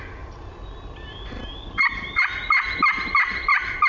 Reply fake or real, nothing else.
real